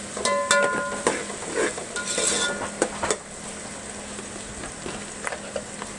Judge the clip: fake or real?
real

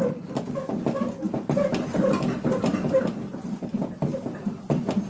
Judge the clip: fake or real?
real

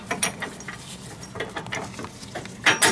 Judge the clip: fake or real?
real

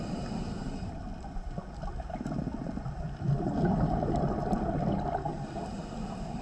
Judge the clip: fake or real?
fake